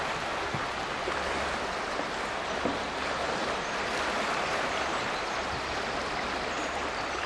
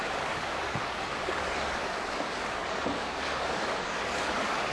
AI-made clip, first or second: second